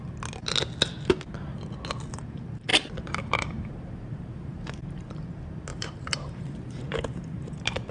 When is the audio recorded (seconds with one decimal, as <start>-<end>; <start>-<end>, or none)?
0.0-2.7; 5.1-5.7; 7.5-7.9